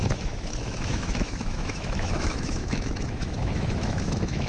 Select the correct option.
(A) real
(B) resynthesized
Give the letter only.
B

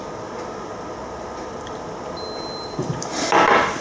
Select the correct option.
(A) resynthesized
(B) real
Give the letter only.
B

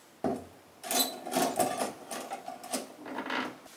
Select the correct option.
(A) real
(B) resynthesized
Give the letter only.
A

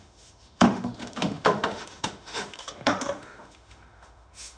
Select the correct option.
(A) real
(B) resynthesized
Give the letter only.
B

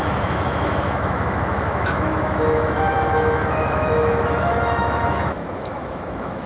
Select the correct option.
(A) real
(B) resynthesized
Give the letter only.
B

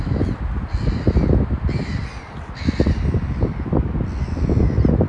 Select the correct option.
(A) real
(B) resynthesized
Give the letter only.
A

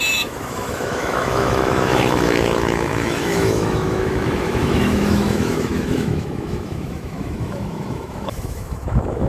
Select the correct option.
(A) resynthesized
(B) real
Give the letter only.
A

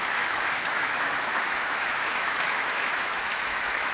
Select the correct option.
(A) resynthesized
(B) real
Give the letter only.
A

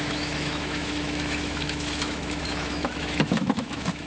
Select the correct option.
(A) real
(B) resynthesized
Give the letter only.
B